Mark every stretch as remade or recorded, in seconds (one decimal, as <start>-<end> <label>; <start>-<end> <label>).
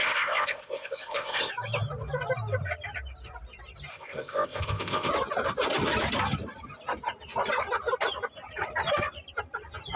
0.0-1.5 remade; 1.5-3.9 recorded; 3.9-5.1 remade; 5.1-10.0 recorded